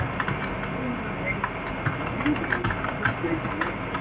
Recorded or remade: recorded